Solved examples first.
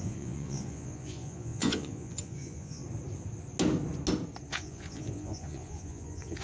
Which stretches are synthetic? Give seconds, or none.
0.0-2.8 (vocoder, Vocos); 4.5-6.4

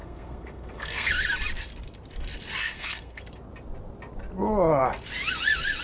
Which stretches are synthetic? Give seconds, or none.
0.0-1.1 (codec, SNAC); 2.6-3.2

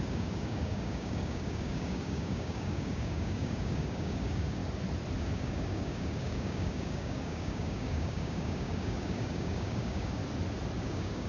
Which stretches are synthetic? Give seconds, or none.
0.0-4.6 (codec, DAC); 5.2-10.2; 10.8-11.3